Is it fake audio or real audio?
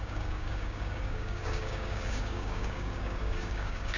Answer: fake